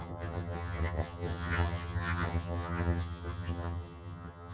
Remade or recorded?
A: remade